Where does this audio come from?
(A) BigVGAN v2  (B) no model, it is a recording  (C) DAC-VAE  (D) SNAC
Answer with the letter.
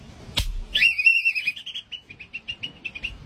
B